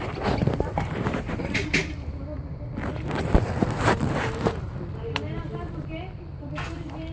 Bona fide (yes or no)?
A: no